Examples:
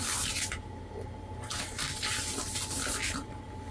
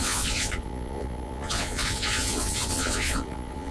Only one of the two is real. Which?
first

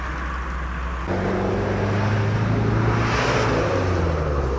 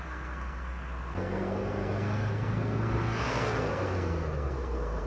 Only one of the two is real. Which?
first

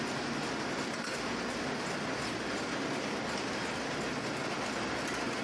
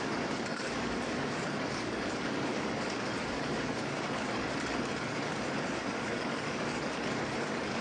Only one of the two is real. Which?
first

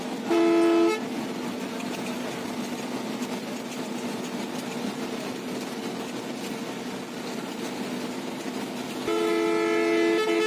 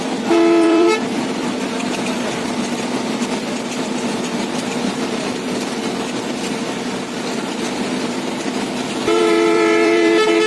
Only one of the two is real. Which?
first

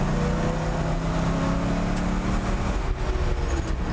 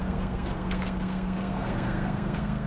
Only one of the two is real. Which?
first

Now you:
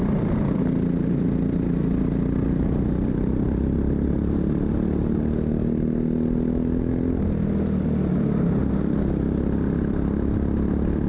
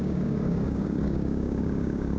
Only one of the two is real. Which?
first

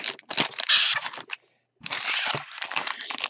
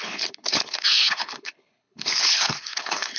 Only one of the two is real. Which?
first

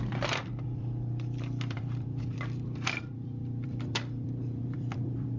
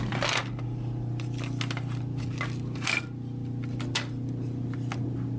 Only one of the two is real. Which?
second